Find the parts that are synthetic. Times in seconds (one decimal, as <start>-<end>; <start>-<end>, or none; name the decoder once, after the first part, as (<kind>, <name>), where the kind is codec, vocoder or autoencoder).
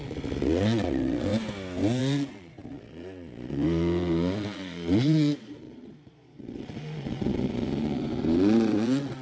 0.0-1.3 (vocoder, Vocos); 2.0-9.2